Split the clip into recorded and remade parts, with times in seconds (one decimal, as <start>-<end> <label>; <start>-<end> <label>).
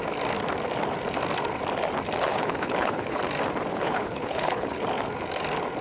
0.0-2.3 recorded; 2.3-3.2 remade; 3.2-3.7 recorded; 3.7-4.8 remade; 4.8-5.8 recorded